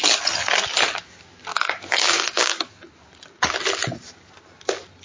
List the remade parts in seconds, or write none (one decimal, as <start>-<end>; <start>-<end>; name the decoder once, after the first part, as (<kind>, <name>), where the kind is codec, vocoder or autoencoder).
1.5-2.7 (codec, DAC)

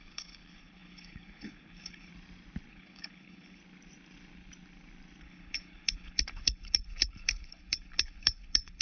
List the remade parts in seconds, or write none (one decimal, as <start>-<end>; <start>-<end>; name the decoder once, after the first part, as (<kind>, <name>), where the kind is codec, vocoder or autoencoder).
0.0-2.1 (codec, HILCodec); 2.7-3.6; 5.2-8.8

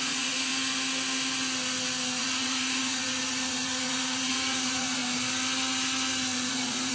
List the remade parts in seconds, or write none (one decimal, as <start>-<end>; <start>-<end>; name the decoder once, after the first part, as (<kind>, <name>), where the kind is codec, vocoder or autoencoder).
0.0-0.5 (vocoder, Vocos); 2.2-5.0; 6.5-6.9

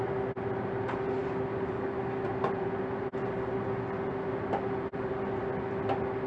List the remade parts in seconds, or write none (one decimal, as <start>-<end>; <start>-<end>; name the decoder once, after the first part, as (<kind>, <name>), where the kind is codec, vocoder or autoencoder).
none

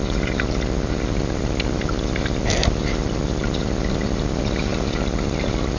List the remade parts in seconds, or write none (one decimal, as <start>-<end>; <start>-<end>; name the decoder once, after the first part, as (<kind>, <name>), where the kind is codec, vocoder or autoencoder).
none

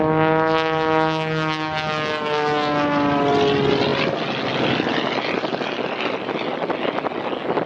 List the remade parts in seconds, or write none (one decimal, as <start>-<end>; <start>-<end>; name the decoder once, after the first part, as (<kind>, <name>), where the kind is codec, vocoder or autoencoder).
none

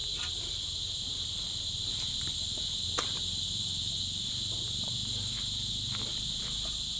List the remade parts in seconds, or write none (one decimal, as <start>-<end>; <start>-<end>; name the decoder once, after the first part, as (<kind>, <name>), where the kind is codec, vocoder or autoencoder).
none